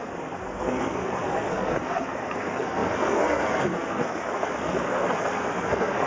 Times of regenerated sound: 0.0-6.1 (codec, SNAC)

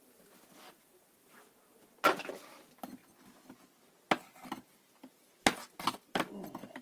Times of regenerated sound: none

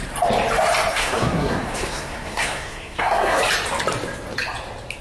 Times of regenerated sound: 0.9-3.4 (codec, SNAC)